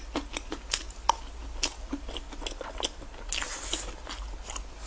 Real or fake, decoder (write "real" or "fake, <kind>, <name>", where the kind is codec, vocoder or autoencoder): real